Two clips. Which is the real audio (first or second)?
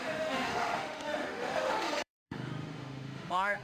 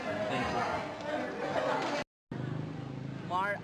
second